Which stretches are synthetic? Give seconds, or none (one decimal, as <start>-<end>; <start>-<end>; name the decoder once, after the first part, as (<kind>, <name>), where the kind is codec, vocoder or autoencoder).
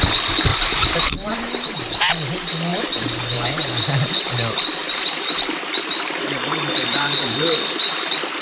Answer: 0.5-2.1 (vocoder, BigVGAN v2); 2.7-3.7; 4.8-7.9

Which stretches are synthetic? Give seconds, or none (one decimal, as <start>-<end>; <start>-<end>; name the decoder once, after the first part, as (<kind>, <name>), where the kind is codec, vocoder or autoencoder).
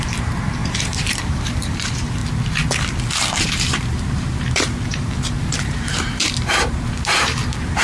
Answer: 0.0-2.2 (vocoder, BigVGAN v2); 3.4-7.8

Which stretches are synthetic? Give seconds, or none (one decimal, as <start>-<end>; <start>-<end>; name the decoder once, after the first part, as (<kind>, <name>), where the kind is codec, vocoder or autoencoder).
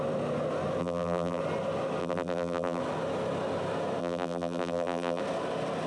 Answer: 0.8-1.4 (vocoder, BigVGAN v2); 2.0-2.8; 4.0-5.2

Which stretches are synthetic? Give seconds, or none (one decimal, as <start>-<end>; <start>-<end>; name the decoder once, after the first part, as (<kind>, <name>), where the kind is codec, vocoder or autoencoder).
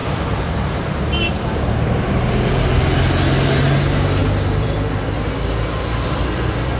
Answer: 0.0-1.7 (vocoder, BigVGAN v2); 4.2-5.3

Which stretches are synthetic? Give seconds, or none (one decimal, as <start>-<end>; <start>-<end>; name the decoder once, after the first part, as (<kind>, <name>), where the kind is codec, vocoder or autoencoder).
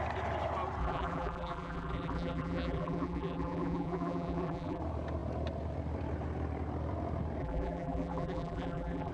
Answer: 0.8-4.8 (vocoder, BigVGAN v2); 7.4-9.1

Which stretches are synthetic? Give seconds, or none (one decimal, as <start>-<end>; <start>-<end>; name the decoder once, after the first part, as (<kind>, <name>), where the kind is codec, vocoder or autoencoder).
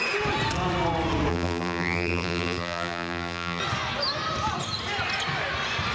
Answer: 1.3-3.6 (vocoder, BigVGAN v2)